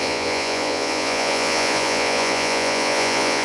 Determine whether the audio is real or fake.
fake